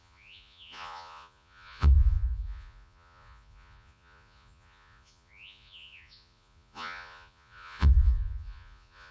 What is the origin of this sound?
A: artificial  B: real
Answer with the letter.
A